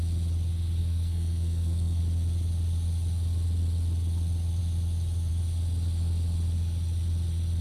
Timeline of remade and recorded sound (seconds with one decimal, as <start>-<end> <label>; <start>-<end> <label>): 0.0-0.8 recorded; 0.8-2.0 remade; 2.0-7.6 recorded